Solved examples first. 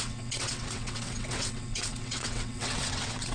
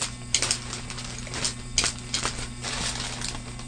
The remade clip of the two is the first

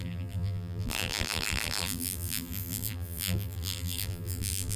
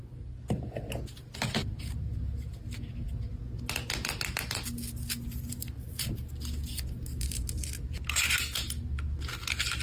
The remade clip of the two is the first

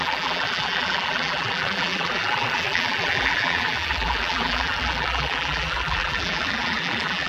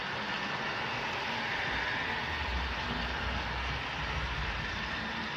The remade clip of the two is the first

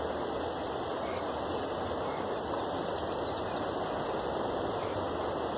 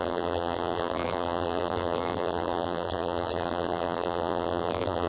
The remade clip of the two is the second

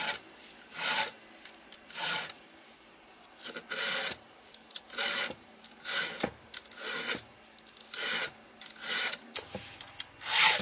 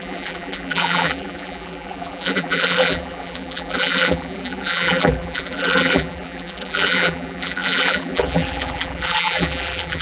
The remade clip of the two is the second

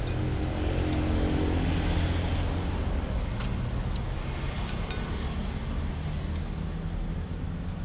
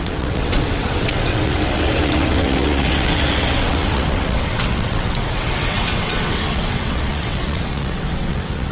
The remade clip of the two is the second